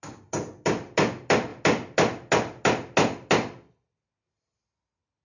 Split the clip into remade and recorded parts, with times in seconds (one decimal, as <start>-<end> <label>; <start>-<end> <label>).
0.0-5.2 recorded